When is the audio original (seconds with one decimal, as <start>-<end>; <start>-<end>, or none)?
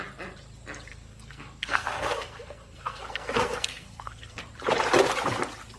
0.0-0.9; 4.4-5.8